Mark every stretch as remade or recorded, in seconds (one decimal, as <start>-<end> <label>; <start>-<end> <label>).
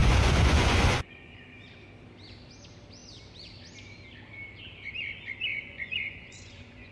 0.0-1.7 remade; 1.7-5.5 recorded; 5.5-6.9 remade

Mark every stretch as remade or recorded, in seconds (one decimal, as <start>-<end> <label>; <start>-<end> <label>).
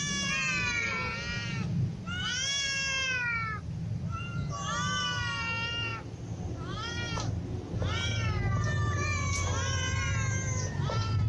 0.0-11.3 recorded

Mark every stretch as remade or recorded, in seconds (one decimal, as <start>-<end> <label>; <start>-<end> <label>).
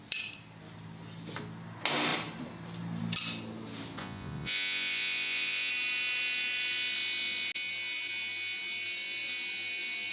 0.0-4.0 recorded; 4.0-5.7 remade; 5.7-10.1 recorded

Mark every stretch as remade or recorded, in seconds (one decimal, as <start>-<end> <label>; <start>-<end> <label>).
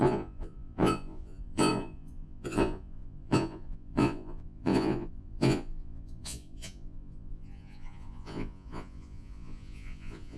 0.0-10.4 remade